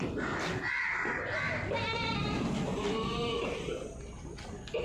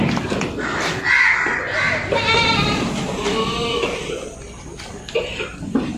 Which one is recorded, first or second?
first